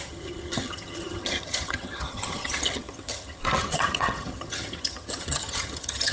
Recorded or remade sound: remade